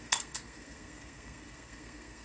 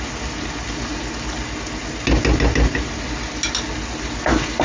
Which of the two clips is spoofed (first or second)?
first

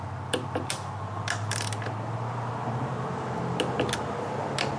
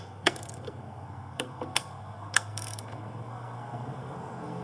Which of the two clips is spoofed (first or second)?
second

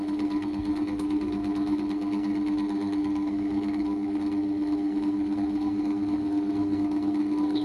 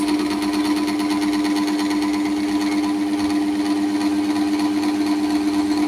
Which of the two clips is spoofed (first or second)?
first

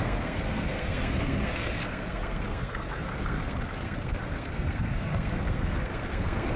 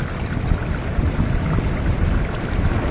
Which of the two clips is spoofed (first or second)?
first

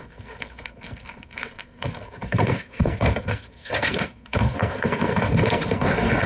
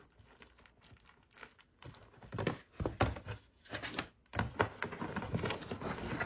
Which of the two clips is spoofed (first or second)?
first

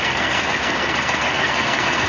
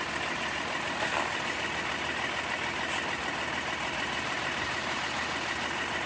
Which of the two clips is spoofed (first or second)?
first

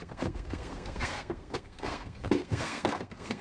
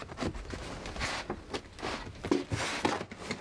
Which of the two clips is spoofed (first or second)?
first